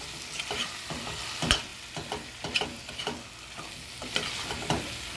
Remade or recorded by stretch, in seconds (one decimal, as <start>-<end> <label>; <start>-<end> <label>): 0.0-5.2 recorded